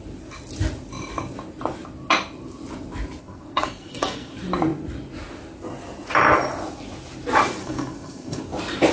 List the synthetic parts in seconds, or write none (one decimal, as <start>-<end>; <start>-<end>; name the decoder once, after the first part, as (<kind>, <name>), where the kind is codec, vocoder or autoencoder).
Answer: 3.2-4.3 (codec, SNAC); 7.6-8.4